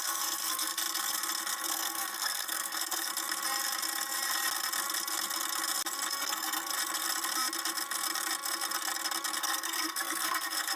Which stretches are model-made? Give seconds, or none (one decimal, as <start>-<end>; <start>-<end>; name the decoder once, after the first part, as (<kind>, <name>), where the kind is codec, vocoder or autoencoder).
0.0-0.8 (codec, SNAC); 1.7-3.1; 6.1-6.7; 9.4-10.8